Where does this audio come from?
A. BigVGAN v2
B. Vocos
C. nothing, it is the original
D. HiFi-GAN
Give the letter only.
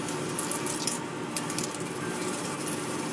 C